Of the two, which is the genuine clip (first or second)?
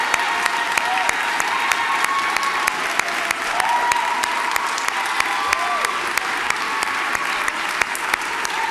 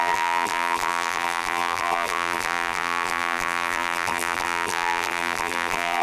first